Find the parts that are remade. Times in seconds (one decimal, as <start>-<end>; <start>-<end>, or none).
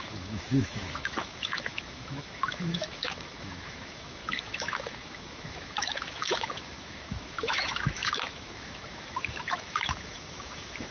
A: 0.0-10.9